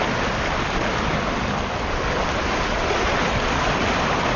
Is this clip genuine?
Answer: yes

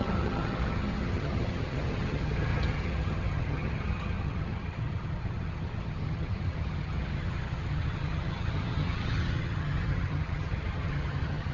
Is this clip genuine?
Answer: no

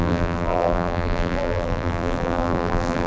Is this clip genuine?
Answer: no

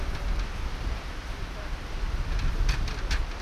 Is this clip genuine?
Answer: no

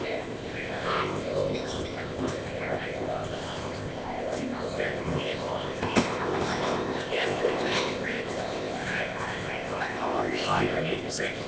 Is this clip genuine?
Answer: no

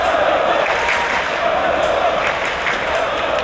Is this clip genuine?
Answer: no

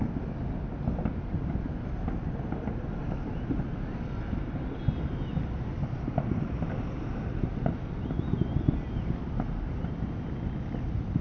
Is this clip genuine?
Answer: yes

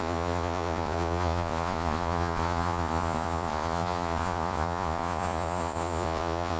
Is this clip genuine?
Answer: no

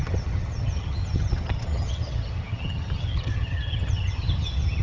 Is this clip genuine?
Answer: no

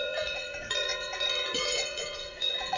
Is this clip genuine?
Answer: no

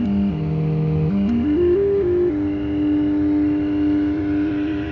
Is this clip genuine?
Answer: yes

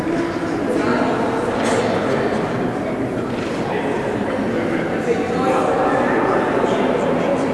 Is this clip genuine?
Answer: yes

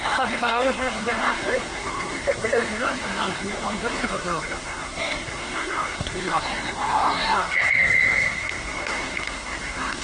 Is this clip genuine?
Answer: no